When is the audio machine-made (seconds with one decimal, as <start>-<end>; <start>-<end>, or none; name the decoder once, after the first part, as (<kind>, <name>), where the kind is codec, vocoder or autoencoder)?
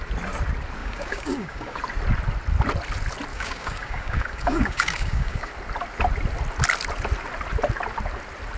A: 0.8-1.8 (codec, DAC); 3.3-5.5